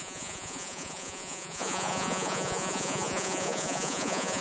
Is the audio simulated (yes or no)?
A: yes